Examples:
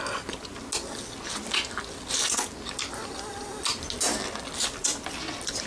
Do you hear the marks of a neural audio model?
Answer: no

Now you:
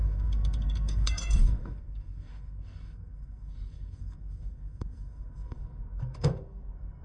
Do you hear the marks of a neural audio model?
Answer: yes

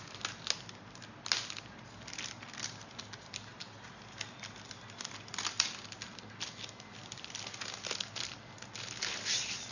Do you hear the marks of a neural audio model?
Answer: no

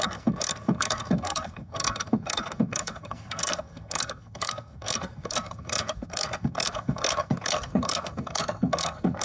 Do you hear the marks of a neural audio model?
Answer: yes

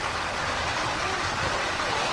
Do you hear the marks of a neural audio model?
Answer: no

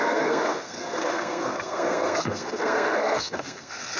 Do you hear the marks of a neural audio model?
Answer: yes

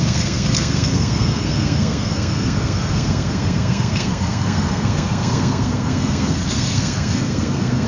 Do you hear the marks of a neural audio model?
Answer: yes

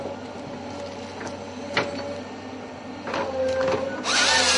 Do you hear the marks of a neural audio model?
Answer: no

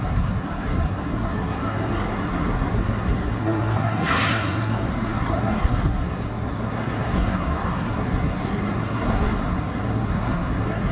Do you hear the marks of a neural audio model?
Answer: yes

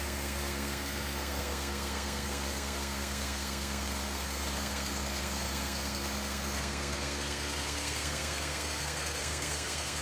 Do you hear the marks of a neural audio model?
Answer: yes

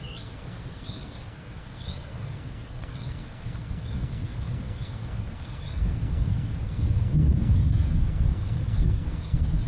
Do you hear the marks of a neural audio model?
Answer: yes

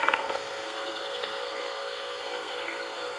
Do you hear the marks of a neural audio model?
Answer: yes